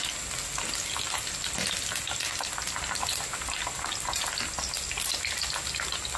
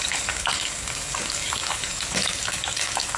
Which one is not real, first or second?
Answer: second